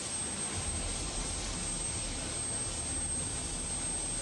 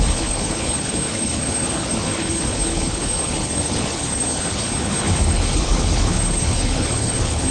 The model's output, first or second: second